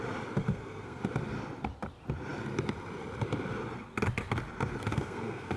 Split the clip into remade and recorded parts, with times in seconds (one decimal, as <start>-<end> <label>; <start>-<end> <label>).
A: 0.0-0.4 recorded; 0.4-1.0 remade; 1.0-4.9 recorded; 4.9-5.6 remade